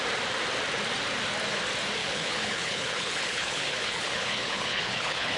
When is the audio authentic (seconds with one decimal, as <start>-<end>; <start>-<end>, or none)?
0.0-2.0